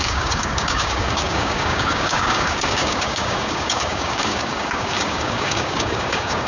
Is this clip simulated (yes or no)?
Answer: yes